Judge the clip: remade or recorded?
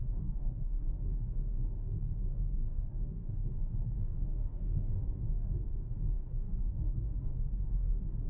remade